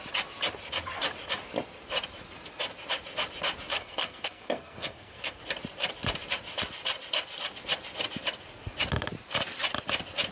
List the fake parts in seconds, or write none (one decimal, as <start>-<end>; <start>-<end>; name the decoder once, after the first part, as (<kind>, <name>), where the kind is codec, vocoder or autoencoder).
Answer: 3.7-5.4 (codec, SNAC)